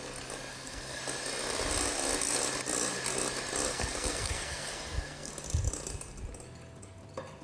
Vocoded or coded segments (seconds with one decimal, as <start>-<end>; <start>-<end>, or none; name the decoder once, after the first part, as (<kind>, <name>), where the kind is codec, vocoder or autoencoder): 0.5-1.0 (codec, SNAC); 3.7-5.3